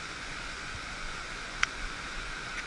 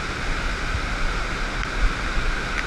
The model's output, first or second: first